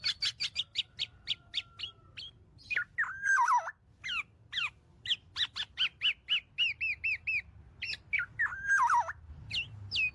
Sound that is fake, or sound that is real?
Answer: real